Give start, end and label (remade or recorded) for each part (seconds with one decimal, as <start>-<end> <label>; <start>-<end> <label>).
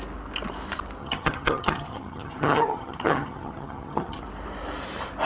0.0-1.0 recorded; 1.0-4.2 remade; 4.2-5.3 recorded